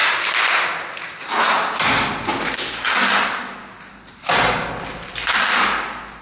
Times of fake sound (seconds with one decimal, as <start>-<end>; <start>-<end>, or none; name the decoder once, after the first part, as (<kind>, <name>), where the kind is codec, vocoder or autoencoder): 0.0-0.6 (vocoder, BigVGAN v2)